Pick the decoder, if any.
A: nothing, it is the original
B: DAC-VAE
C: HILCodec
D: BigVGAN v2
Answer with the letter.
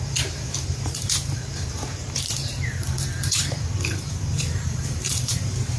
D